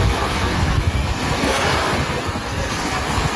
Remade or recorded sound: remade